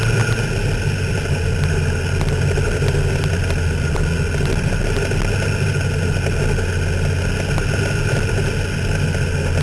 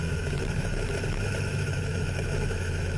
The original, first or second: first